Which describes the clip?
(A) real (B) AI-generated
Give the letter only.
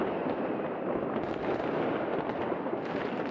A